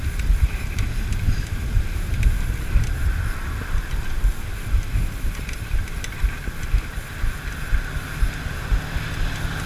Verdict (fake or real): real